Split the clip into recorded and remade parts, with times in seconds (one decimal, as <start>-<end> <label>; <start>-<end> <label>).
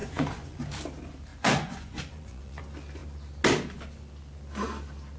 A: 0.0-0.6 remade; 0.6-1.3 recorded; 1.3-2.6 remade; 2.6-5.2 recorded